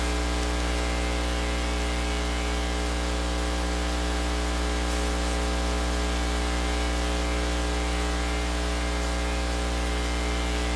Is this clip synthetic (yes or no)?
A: no